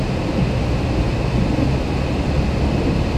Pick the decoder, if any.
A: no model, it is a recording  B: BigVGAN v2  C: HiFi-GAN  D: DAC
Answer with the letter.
A